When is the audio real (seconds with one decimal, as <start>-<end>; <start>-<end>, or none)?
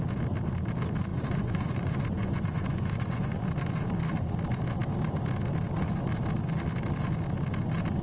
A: 0.0-1.1; 3.4-8.0